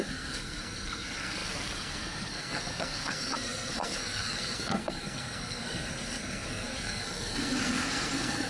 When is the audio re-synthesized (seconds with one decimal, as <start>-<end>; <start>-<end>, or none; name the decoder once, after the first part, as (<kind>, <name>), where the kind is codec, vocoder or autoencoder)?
0.0-8.5 (codec, SNAC)